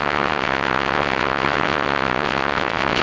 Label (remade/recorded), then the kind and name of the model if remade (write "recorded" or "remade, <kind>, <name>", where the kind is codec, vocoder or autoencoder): remade, vocoder, WaveNeXt